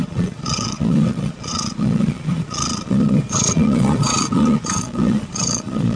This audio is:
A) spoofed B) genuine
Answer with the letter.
A